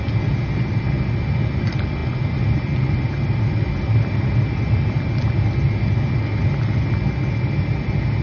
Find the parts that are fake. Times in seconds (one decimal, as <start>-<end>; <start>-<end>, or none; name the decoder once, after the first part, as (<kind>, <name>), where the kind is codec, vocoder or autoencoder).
none

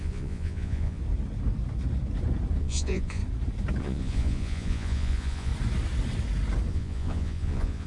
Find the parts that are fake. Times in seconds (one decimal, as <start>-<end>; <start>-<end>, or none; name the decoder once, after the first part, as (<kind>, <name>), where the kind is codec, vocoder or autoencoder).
0.0-1.0 (vocoder, Vocos); 2.6-3.2; 3.8-5.5; 6.7-7.9